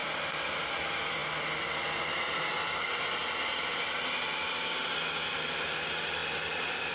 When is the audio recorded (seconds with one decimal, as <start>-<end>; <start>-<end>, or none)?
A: 0.0-0.7; 1.2-5.3